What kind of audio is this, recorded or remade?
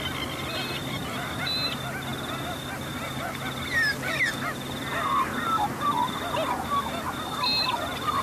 recorded